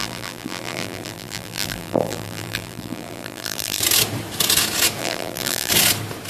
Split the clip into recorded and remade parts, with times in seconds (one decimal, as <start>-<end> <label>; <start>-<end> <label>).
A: 0.0-3.8 remade; 3.8-5.0 recorded; 5.0-5.7 remade; 5.7-6.3 recorded